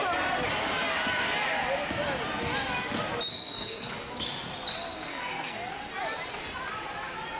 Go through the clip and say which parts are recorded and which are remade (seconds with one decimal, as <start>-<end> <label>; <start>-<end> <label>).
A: 0.0-3.3 recorded; 3.3-3.9 remade; 3.9-5.1 recorded; 5.1-5.7 remade; 5.7-7.4 recorded